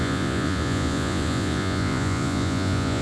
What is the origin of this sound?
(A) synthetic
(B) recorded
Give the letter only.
A